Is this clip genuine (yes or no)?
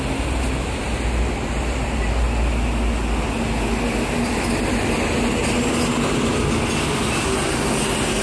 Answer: yes